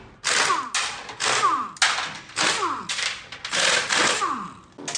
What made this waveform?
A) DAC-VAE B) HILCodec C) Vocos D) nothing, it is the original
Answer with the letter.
D